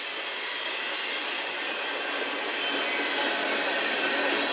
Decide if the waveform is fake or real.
real